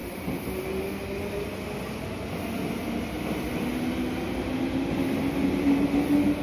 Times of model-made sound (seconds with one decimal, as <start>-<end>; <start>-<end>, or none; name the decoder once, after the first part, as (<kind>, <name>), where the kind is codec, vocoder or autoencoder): 0.0-0.8 (vocoder, BigVGAN v2)